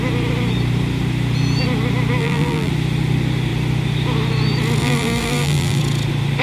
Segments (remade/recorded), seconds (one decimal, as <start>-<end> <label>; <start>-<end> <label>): 0.0-2.2 recorded; 2.2-2.7 remade; 2.7-4.8 recorded; 4.8-5.8 remade; 5.8-6.4 recorded